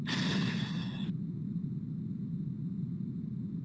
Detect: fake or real real